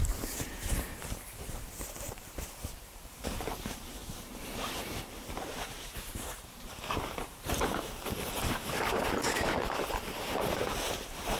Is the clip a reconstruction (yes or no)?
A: yes